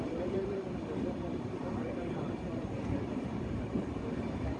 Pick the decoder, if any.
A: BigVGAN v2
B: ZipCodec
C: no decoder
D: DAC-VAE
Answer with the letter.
A